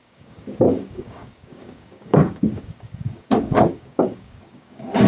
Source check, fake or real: fake